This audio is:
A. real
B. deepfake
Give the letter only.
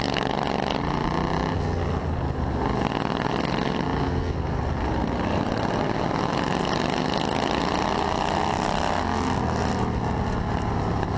A